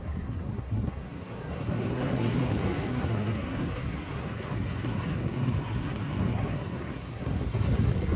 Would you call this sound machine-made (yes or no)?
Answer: yes